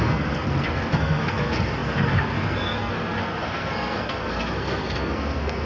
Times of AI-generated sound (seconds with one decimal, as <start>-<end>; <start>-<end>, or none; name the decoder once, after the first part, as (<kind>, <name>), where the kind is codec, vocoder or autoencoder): 0.0-5.7 (codec, SNAC)